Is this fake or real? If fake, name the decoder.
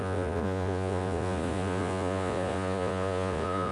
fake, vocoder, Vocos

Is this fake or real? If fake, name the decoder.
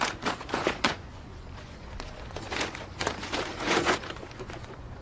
fake, vocoder, Vocos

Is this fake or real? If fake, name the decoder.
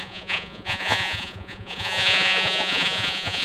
fake, vocoder, Vocos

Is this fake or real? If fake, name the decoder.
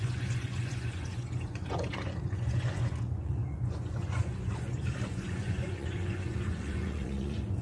fake, vocoder, Vocos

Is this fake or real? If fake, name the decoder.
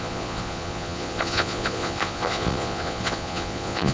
fake, vocoder, Vocos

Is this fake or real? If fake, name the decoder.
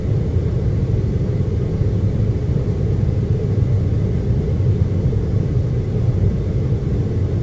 real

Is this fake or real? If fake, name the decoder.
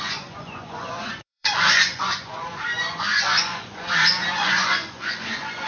fake, vocoder, Vocos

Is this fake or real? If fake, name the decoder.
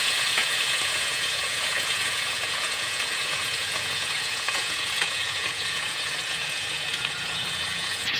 fake, vocoder, Vocos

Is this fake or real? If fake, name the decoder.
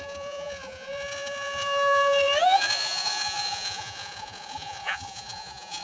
fake, vocoder, Vocos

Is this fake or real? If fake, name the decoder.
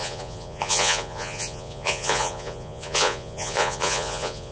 fake, vocoder, Vocos